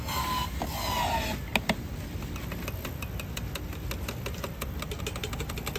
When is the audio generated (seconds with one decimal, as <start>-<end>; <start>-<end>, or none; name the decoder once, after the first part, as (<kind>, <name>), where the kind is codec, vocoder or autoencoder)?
none